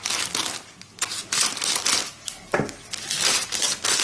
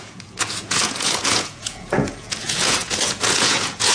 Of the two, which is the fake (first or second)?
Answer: second